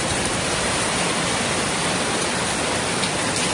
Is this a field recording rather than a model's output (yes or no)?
no